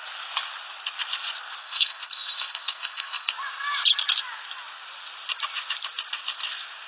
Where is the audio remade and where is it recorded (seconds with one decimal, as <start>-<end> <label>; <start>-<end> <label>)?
0.0-1.6 recorded; 1.6-3.3 remade; 3.3-6.9 recorded